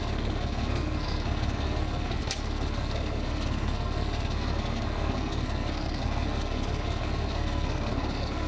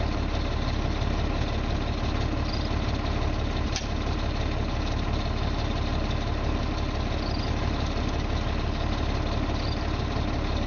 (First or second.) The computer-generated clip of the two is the first